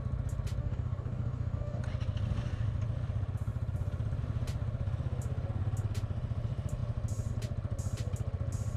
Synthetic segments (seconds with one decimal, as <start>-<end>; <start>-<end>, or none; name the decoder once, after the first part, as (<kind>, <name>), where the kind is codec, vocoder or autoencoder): 0.6-1.8 (codec, DAC)